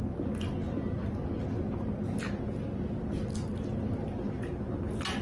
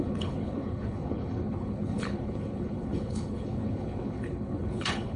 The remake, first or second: second